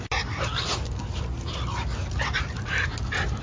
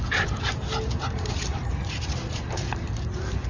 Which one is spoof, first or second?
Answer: second